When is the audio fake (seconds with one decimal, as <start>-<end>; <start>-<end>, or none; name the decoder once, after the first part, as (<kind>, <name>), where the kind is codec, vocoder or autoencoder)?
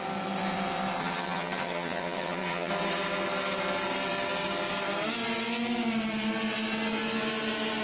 1.0-2.7 (vocoder, HiFi-GAN)